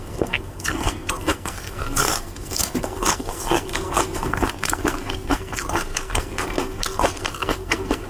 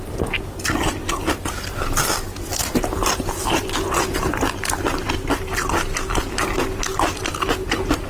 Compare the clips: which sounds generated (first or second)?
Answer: first